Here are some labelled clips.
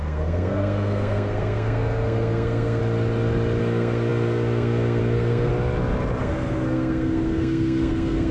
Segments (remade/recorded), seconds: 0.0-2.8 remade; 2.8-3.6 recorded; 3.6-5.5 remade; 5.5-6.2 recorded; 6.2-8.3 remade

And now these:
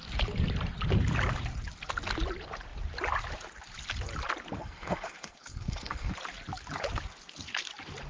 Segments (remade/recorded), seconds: 0.0-4.6 recorded; 4.6-6.1 remade; 6.1-8.1 recorded